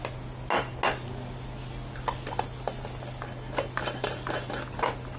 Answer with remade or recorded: recorded